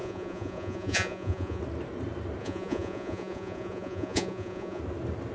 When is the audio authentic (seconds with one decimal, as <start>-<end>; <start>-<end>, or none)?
1.6-2.4; 4.8-5.3